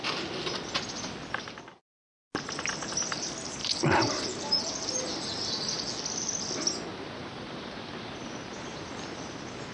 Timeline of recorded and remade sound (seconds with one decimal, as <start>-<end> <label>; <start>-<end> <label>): 0.0-3.6 recorded; 3.6-4.6 remade; 4.6-6.9 recorded; 6.9-8.9 remade; 8.9-9.7 recorded